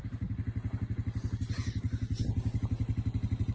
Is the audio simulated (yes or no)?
no